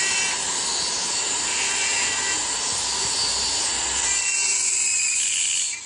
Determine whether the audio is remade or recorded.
recorded